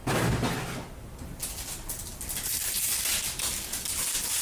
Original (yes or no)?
yes